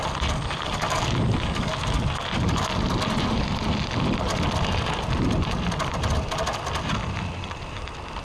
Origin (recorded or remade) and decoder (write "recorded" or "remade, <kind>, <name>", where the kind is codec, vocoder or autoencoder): recorded